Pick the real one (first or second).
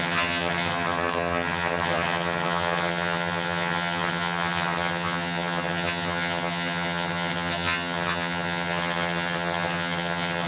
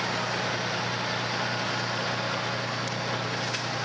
second